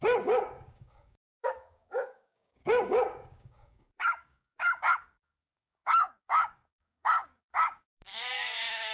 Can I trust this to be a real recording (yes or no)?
no